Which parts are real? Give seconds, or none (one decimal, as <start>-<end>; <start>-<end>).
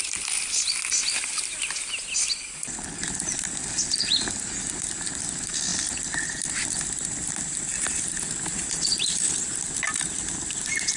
0.0-11.0